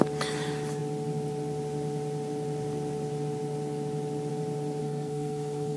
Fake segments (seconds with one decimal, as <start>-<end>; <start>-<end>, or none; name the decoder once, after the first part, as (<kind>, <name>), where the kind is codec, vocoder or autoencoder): 4.8-5.8 (codec, SNAC)